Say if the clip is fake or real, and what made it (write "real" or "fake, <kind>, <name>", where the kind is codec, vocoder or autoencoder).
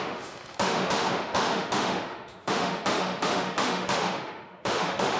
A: fake, autoencoder, DAC-VAE